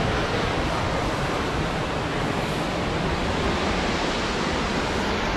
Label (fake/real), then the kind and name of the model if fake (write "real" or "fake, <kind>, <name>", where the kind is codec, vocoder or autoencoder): real